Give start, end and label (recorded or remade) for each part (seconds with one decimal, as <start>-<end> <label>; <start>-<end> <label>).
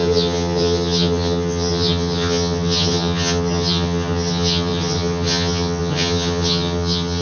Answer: 0.0-7.2 remade